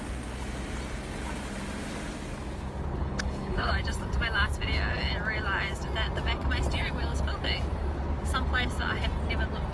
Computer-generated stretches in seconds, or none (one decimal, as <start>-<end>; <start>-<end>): 3.0-3.7